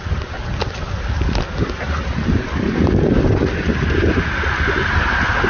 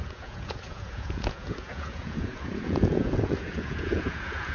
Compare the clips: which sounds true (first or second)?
first